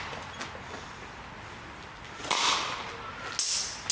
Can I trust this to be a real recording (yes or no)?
yes